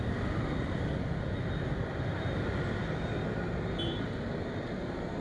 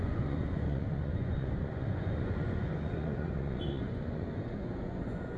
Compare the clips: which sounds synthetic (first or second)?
second